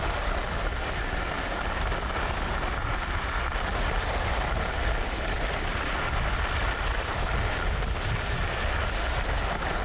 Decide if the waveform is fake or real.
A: real